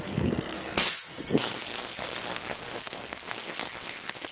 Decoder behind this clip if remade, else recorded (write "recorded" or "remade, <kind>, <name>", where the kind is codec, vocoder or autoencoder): remade, codec, SNAC